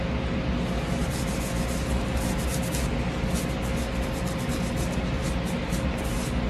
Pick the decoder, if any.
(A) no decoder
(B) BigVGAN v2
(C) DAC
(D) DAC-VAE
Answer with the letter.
A